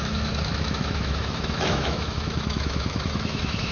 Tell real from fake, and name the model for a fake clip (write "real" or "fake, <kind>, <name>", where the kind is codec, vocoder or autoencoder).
fake, autoencoder, DAC-VAE